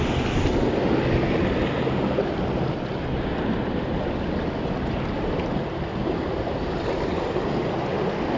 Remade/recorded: recorded